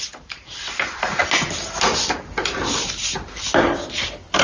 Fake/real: real